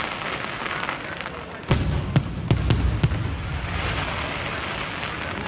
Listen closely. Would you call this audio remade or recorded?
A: recorded